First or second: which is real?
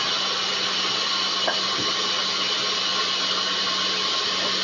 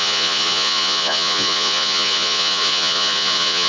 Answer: first